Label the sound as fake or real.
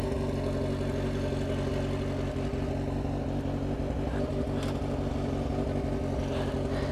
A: real